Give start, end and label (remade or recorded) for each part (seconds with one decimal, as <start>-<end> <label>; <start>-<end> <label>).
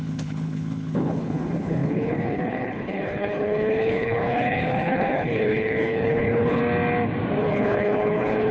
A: 0.0-6.6 remade; 6.6-7.4 recorded; 7.4-8.5 remade